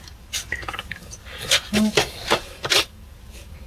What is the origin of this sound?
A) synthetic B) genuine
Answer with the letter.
A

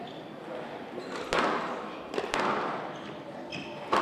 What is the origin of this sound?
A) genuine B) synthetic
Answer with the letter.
A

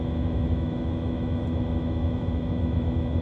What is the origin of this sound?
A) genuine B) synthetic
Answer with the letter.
B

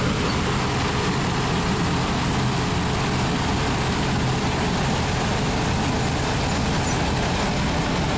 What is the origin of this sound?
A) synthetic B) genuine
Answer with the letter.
B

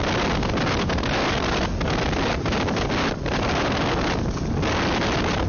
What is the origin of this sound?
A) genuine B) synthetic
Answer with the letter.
A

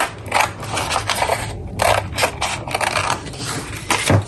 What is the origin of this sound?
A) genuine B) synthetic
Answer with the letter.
A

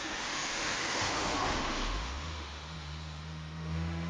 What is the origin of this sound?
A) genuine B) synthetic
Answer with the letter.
B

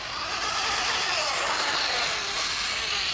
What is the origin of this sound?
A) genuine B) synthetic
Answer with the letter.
A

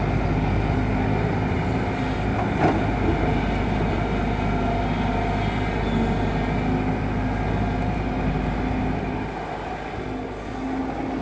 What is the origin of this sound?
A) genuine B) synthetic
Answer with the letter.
A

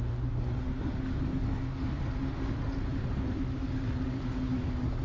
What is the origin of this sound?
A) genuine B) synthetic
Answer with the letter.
A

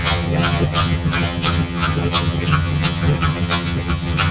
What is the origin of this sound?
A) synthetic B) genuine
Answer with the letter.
A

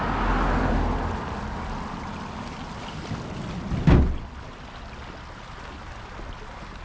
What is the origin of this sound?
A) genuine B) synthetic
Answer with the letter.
A